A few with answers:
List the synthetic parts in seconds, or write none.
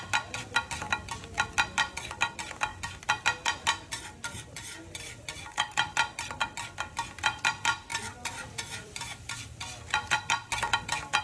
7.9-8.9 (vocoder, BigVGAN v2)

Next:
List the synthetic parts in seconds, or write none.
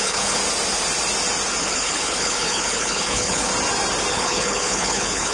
0.0-0.4 (codec, HILCodec); 1.6-3.5; 4.1-5.3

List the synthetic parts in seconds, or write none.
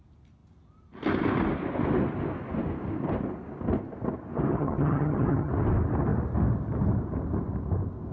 4.5-5.5 (vocoder, HiFi-GAN)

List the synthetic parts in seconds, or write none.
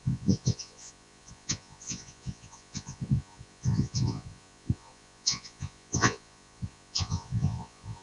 0.0-8.0 (vocoder, Vocos)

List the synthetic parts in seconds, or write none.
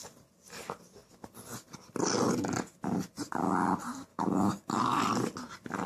4.1-5.0 (codec, DAC)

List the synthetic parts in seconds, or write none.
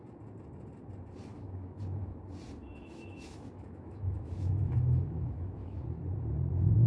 1.3-2.2 (autoencoder, DAC-VAE); 2.6-5.8